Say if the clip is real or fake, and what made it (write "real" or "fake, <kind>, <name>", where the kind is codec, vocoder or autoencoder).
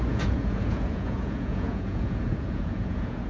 fake, vocoder, Vocos